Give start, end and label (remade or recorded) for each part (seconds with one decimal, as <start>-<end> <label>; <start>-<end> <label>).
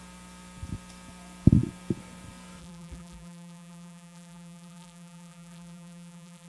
0.0-2.6 recorded; 2.6-6.5 remade